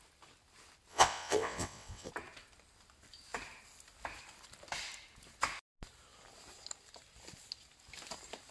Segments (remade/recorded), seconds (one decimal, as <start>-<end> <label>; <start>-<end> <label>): 0.0-0.9 recorded; 0.9-2.1 remade; 2.1-8.5 recorded